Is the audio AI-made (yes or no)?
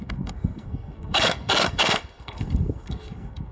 yes